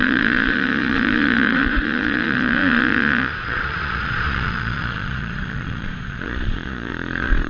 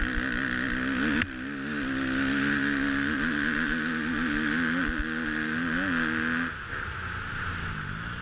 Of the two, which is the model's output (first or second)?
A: first